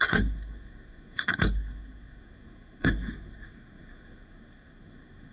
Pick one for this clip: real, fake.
fake